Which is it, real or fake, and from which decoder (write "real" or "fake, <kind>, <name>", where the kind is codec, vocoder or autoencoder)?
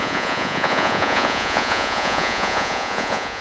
fake, vocoder, Vocos